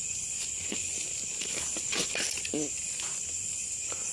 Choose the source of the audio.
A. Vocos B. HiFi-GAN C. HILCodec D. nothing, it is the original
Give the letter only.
D